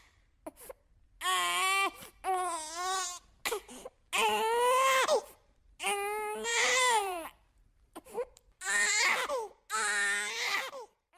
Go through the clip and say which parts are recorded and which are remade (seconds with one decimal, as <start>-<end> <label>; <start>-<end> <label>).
0.0-6.5 recorded; 6.5-9.0 remade; 9.0-11.2 recorded